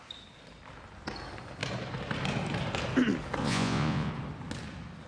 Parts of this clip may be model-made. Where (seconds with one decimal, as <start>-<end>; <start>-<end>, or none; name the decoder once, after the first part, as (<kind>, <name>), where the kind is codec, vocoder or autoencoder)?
3.4-4.1 (vocoder, Vocos)